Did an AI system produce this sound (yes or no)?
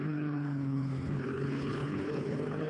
yes